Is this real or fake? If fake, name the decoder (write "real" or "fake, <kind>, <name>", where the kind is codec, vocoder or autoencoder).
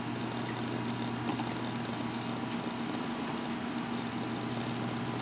real